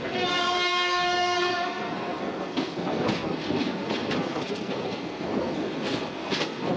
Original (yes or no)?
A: no